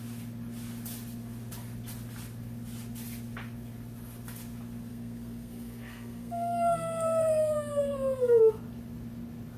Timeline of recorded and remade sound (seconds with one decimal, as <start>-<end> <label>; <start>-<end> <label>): 0.0-4.9 recorded; 4.9-8.5 remade; 8.5-9.6 recorded